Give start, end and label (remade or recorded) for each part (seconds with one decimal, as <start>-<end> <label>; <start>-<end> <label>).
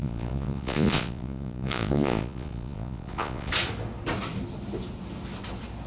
0.0-3.5 remade; 3.5-5.9 recorded